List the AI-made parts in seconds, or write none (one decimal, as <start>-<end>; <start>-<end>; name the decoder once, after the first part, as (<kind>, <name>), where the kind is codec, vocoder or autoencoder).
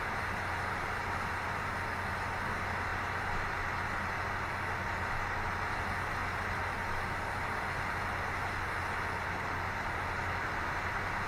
none